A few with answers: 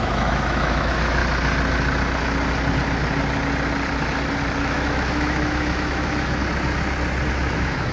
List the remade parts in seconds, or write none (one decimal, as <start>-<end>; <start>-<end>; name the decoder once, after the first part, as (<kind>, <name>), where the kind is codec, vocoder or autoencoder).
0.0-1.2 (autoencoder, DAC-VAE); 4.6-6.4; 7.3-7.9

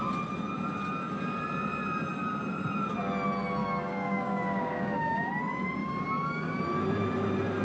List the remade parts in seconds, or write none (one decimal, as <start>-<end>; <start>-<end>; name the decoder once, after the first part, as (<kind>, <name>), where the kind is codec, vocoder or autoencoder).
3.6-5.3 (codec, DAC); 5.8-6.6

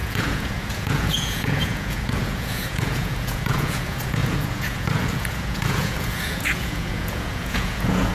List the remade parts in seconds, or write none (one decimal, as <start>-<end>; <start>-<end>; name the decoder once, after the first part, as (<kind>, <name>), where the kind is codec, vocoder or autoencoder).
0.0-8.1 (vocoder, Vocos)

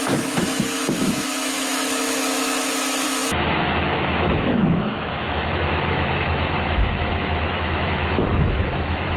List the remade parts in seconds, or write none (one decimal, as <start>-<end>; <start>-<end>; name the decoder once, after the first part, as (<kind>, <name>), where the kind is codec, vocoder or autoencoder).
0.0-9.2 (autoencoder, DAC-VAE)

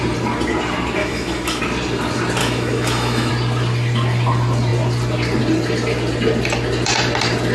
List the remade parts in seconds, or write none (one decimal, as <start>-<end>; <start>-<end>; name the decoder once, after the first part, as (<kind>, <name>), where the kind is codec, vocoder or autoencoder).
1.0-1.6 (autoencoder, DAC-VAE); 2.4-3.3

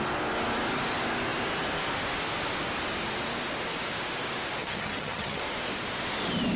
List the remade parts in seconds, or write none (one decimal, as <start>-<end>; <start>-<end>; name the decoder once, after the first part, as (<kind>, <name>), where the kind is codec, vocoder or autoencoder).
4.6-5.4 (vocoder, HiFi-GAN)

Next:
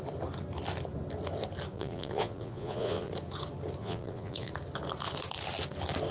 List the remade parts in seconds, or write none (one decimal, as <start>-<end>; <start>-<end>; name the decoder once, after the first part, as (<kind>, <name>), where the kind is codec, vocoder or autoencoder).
1.7-3.1 (vocoder, Vocos); 3.8-4.5